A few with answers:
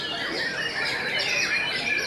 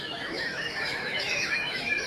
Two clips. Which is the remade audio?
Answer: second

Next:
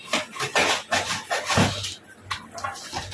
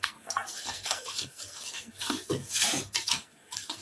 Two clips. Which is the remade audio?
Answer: second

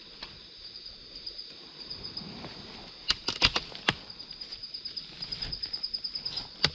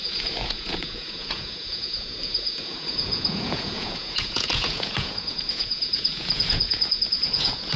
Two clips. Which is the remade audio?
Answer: second